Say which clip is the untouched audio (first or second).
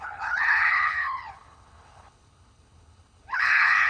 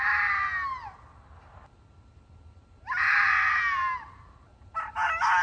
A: second